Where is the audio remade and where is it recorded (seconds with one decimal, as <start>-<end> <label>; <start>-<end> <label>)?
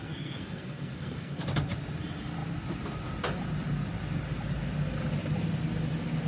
0.0-1.4 remade; 1.4-6.3 recorded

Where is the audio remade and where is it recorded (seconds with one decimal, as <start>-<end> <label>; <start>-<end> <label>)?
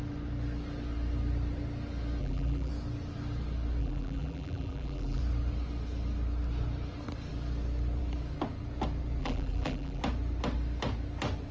0.0-2.2 recorded; 2.2-2.7 remade; 2.7-3.8 recorded; 3.8-5.2 remade; 5.2-9.2 recorded; 9.2-10.0 remade; 10.0-11.5 recorded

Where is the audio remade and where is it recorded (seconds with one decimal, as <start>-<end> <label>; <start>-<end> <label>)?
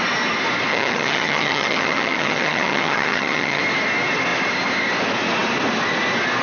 0.0-0.7 recorded; 0.7-3.6 remade; 3.6-6.4 recorded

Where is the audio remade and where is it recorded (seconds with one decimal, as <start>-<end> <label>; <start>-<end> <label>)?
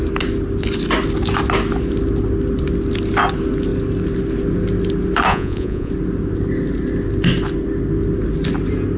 0.0-5.3 recorded; 5.3-5.9 remade; 5.9-9.0 recorded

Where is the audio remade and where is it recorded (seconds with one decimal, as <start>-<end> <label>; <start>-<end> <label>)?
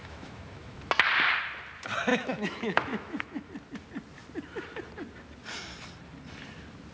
0.0-0.9 remade; 0.9-2.1 recorded; 2.1-3.5 remade; 3.5-6.9 recorded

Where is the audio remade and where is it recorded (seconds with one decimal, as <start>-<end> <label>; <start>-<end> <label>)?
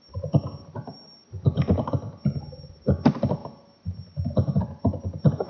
0.0-5.5 recorded